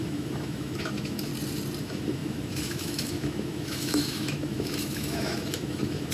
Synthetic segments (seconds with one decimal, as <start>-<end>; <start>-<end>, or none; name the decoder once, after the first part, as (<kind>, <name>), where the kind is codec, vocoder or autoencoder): 0.0-1.3 (autoencoder, DAC-VAE); 1.8-6.1